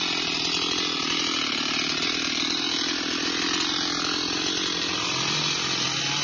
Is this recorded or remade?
recorded